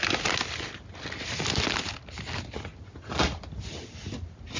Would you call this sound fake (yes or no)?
no